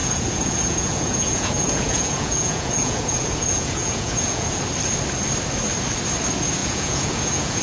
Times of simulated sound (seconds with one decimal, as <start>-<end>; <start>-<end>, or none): 0.0-4.6; 6.6-7.6